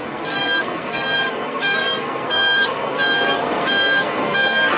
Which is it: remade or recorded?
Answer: remade